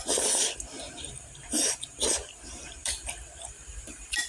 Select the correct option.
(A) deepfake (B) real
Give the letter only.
A